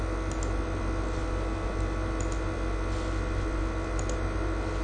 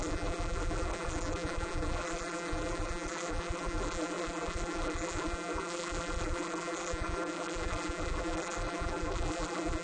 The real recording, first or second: first